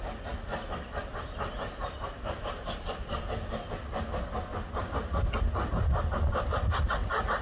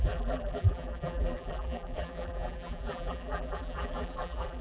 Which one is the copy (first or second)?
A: second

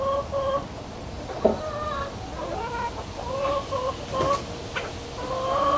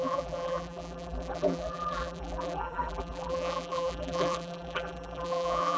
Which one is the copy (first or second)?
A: second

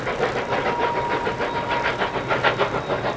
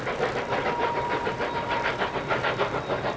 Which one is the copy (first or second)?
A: second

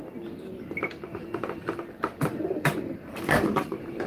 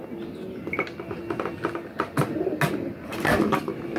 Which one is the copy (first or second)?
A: first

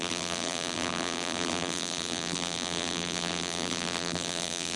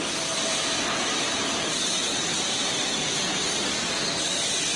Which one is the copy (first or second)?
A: first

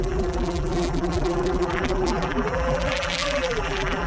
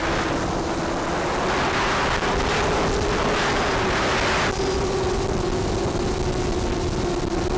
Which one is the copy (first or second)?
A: first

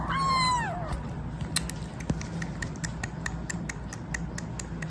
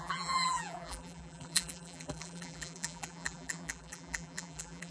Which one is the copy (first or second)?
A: second